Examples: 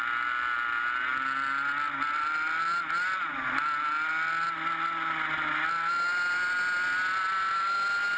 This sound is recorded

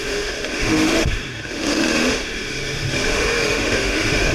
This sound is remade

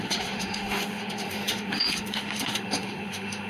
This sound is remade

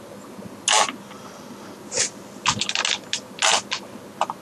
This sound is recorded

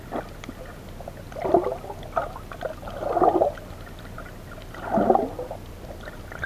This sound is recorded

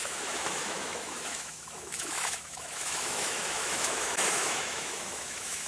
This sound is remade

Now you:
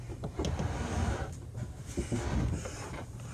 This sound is recorded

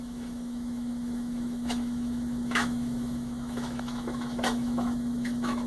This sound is remade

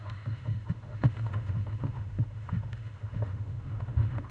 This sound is remade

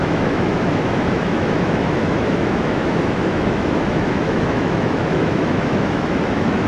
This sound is remade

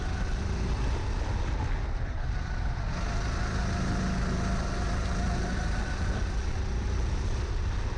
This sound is recorded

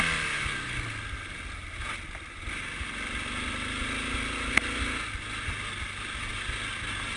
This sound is recorded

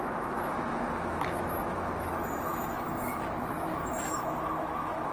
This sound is remade